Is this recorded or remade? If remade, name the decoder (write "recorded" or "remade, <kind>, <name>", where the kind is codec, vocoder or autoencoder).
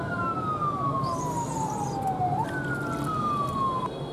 recorded